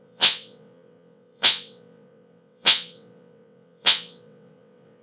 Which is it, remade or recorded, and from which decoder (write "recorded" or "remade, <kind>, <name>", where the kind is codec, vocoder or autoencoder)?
remade, vocoder, WaveNeXt